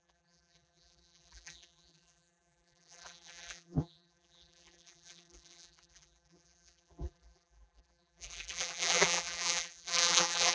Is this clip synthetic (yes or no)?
yes